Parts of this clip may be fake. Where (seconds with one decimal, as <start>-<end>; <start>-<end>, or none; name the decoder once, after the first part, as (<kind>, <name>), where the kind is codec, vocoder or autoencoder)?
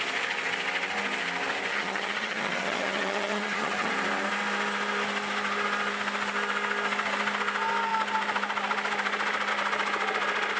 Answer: 1.7-3.9 (vocoder, HiFi-GAN)